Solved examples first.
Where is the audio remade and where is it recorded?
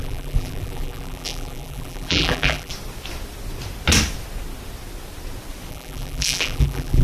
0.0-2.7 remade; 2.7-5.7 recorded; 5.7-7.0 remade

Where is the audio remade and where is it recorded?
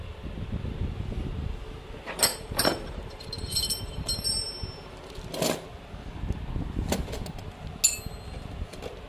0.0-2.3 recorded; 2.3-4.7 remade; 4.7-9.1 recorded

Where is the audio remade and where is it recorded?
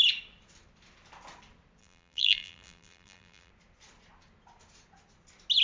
0.0-1.8 recorded; 1.8-3.5 remade; 3.5-5.6 recorded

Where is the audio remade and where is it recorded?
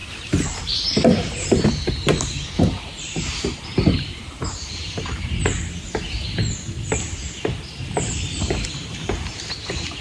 0.0-5.5 remade; 5.5-7.4 recorded; 7.4-10.0 remade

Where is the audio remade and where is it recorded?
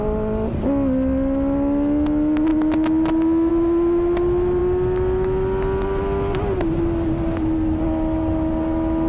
0.0-9.1 recorded